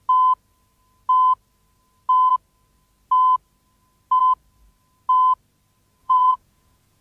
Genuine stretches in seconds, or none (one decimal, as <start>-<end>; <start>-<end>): 0.0-6.0